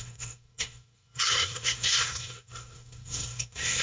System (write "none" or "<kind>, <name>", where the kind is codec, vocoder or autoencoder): codec, SNAC